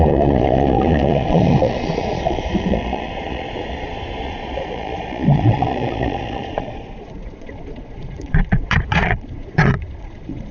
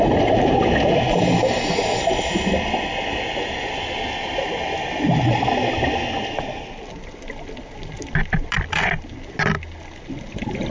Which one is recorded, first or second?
second